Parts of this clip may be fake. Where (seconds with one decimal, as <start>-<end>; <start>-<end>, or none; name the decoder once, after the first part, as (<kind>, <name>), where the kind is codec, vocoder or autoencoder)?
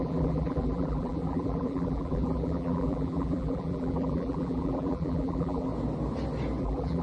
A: 0.0-5.7 (vocoder, BigVGAN v2); 6.6-7.0